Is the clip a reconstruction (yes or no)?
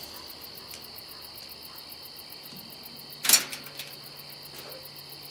no